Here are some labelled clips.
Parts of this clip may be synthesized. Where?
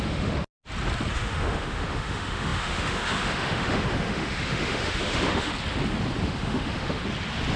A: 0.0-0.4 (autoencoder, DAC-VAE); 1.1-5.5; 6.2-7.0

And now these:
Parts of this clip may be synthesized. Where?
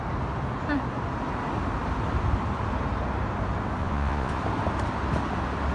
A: 3.8-4.4 (vocoder, Vocos)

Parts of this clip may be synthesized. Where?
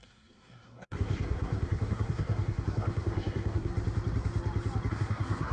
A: 0.0-3.7 (codec, SNAC); 4.9-5.5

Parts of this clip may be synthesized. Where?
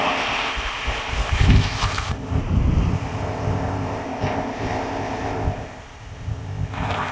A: 0.0-2.4 (codec, ZipCodec); 2.9-7.1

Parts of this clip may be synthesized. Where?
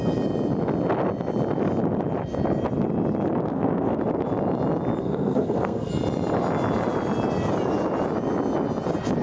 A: 3.5-4.0 (codec, SNAC); 5.0-5.9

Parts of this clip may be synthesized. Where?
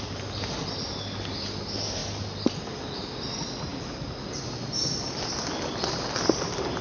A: none